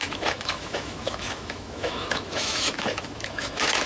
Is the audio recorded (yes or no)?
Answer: no